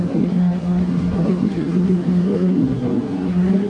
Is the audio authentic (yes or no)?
no